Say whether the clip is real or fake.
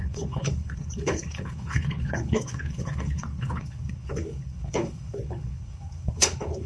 fake